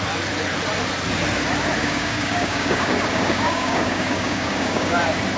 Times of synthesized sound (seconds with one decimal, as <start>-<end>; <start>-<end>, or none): 1.8-5.0